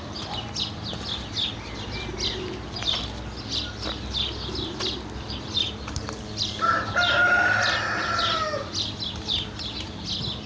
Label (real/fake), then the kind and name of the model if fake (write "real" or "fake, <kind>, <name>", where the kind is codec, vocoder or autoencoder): real